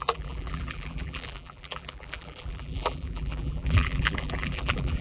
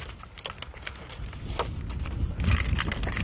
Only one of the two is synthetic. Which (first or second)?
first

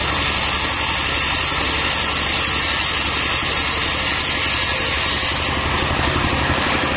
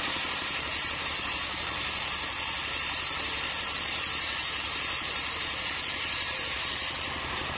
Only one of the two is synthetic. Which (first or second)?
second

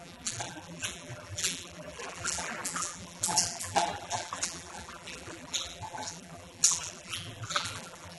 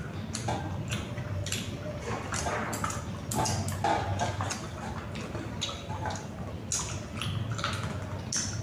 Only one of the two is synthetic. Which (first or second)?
first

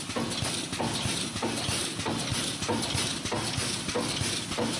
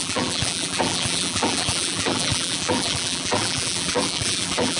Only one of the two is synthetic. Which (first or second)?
second